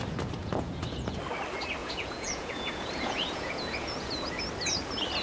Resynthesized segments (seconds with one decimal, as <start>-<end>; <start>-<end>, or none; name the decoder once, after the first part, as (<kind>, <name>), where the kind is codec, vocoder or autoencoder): 0.4-1.2 (vocoder, Vocos); 1.8-4.4